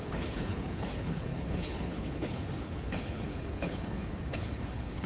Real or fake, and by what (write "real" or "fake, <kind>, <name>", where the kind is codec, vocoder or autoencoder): fake, codec, HILCodec